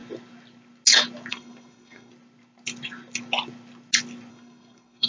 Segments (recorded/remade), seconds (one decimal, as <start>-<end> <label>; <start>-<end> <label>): 0.0-1.3 recorded; 1.3-2.1 remade; 2.1-4.3 recorded; 4.3-5.1 remade